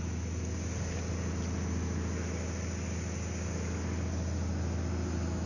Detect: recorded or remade recorded